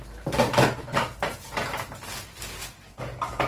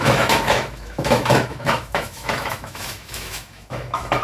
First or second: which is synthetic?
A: second